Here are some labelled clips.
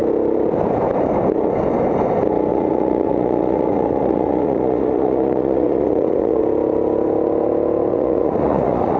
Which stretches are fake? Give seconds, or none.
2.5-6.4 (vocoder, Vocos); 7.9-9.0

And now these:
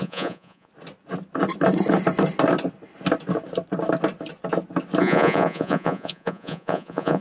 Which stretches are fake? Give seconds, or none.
0.0-0.7 (vocoder, Vocos); 5.0-7.2